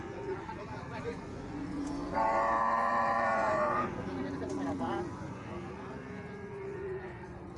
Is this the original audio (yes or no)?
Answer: no